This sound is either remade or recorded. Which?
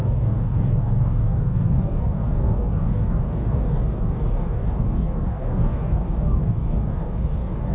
remade